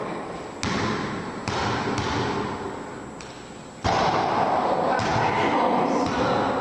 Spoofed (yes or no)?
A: no